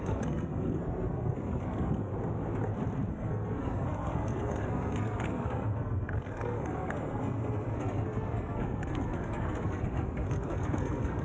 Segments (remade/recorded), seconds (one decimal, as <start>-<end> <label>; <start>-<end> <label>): 0.0-2.1 remade; 2.1-3.1 recorded; 3.1-11.2 remade